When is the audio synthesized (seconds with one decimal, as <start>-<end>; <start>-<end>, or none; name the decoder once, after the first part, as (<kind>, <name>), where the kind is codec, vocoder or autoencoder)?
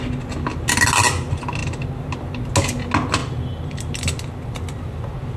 none